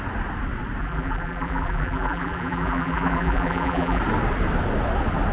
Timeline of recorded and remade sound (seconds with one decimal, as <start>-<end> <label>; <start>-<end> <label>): 0.0-0.8 recorded; 0.8-4.0 remade; 4.0-5.3 recorded